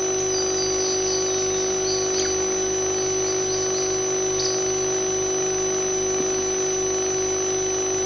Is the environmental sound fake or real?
real